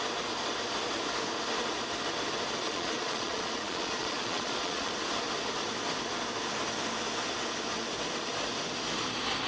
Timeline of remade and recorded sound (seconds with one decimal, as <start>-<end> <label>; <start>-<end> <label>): 0.0-2.6 recorded; 2.6-4.9 remade; 4.9-9.5 recorded